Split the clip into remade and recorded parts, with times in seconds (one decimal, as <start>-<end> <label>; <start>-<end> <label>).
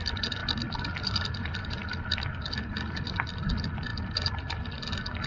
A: 0.0-5.3 recorded